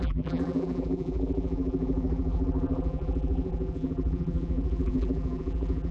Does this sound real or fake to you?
fake